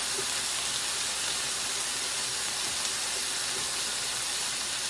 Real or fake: real